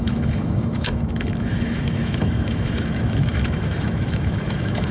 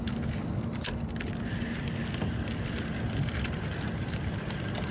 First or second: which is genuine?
second